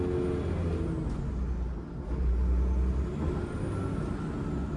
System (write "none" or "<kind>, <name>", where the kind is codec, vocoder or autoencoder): none